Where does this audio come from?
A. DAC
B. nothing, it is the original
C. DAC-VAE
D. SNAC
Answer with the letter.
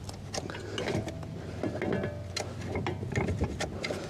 B